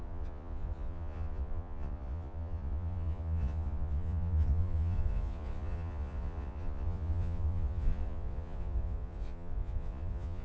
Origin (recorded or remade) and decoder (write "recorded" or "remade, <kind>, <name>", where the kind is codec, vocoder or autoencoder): remade, vocoder, Vocos